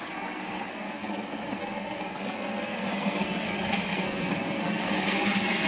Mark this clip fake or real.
fake